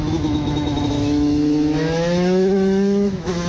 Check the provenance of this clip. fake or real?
fake